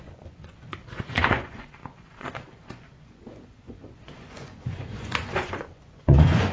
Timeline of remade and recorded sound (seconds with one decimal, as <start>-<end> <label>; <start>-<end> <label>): 0.0-6.5 remade